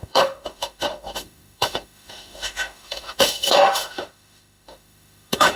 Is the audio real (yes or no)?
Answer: no